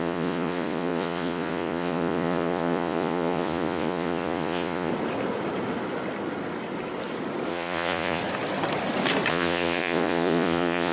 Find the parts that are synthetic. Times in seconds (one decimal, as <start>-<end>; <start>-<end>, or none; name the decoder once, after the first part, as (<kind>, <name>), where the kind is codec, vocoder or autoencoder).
0.0-4.9 (vocoder, Vocos); 7.5-8.2; 9.3-10.9